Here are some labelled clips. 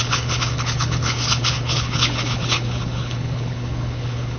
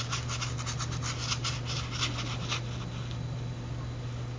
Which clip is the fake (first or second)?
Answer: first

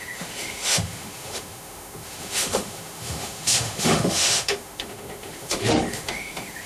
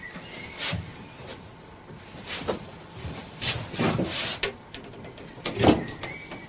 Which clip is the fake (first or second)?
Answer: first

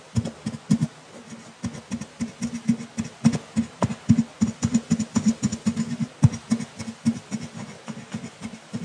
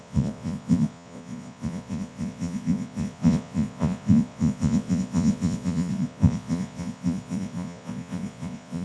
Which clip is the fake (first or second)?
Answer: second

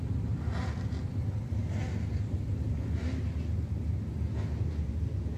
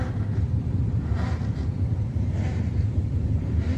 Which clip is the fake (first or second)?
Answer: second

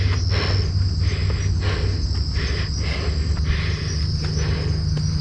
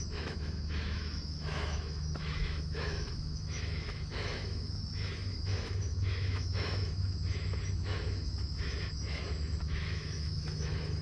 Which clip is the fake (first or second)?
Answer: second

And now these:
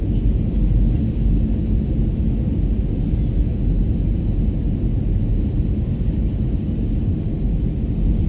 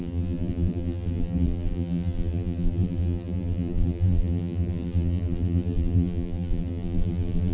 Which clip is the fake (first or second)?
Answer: second